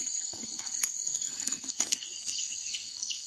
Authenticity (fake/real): fake